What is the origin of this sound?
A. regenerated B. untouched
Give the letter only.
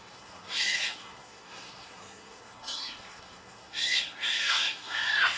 A